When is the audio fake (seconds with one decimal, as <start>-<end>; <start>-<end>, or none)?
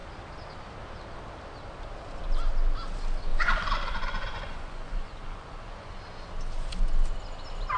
3.3-6.0